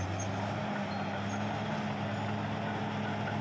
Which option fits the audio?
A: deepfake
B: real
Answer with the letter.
B